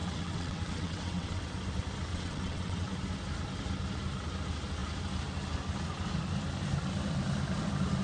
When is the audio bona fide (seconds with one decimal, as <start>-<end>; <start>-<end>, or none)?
1.4-2.1; 2.9-8.0